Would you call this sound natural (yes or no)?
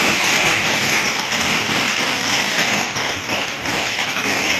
no